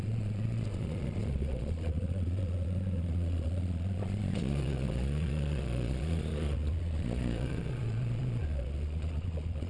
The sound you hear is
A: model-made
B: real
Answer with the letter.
A